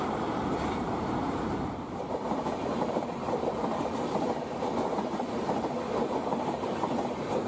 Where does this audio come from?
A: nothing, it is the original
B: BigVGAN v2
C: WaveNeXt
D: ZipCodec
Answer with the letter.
B